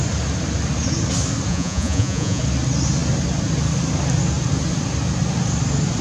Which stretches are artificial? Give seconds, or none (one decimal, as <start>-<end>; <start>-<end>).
1.5-2.4